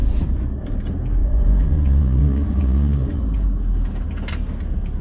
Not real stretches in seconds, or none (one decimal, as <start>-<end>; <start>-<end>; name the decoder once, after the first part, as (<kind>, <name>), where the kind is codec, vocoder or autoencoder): 1.2-3.2 (vocoder, Vocos)

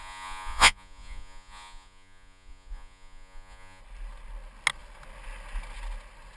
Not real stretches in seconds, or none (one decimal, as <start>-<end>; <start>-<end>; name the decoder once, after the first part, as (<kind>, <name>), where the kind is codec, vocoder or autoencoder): 0.0-3.8 (vocoder, Vocos)

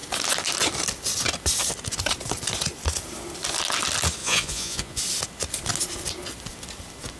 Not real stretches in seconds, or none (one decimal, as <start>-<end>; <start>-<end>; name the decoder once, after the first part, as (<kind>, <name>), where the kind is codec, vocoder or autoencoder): 4.2-5.0 (vocoder, Vocos)

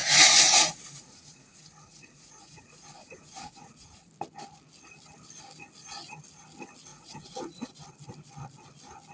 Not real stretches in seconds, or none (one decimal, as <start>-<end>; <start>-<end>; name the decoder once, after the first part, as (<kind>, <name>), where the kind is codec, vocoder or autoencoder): 0.0-4.1 (vocoder, Vocos); 6.9-7.7

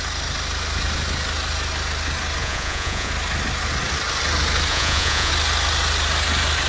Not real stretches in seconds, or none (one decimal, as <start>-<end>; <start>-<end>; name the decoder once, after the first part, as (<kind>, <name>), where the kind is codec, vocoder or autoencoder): 2.4-3.1 (vocoder, Vocos); 4.7-5.3